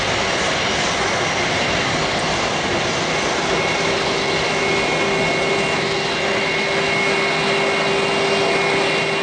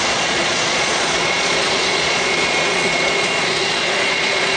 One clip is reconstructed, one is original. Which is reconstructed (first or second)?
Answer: second